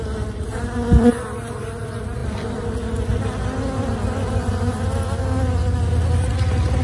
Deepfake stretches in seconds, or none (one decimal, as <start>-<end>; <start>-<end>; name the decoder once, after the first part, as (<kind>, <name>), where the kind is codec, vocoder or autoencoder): none